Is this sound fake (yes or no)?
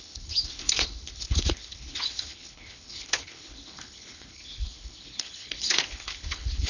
yes